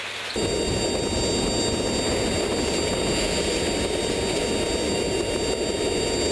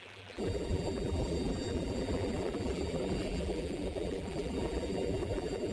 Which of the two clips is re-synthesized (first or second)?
second